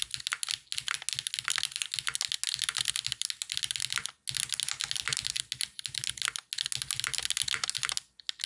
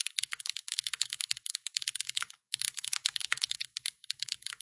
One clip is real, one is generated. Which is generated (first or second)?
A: second